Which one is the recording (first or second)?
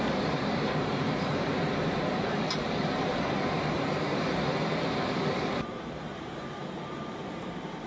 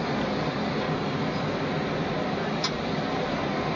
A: second